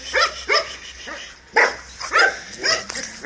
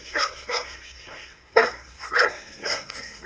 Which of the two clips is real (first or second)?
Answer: first